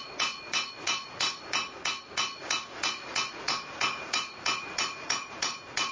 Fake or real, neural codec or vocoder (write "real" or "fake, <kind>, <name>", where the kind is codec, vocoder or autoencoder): fake, vocoder, Vocos